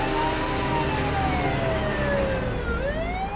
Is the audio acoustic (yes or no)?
yes